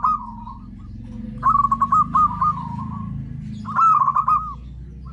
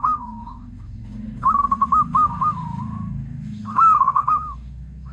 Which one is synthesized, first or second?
second